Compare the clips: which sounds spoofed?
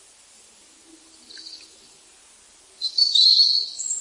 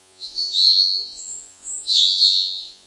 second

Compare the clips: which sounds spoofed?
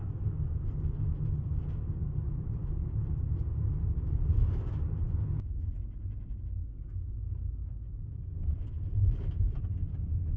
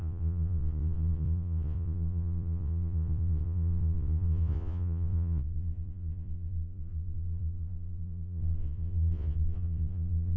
second